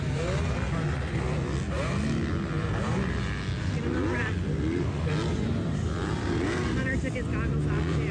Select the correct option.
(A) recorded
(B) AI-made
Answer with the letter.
A